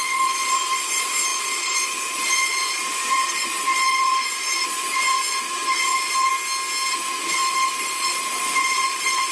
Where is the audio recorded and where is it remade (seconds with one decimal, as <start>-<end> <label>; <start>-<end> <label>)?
0.0-6.3 remade; 6.3-6.9 recorded; 6.9-9.3 remade